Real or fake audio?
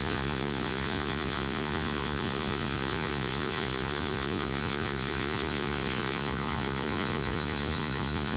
fake